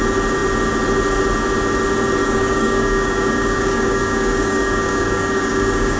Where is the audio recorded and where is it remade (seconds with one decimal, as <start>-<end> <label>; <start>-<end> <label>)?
0.0-2.2 recorded; 2.2-6.0 remade

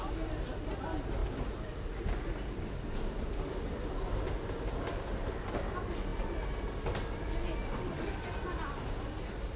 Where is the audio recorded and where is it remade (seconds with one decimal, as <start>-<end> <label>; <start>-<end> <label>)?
0.0-9.6 recorded